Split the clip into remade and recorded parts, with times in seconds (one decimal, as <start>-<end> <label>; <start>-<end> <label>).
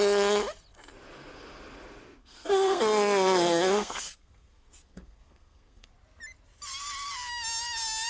0.0-2.2 recorded; 2.2-5.9 remade; 5.9-8.1 recorded